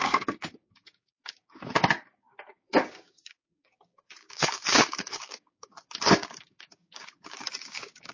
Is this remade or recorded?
remade